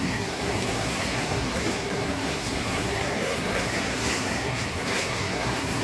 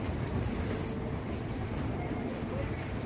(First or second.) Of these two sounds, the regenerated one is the first